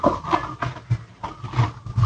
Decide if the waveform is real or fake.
real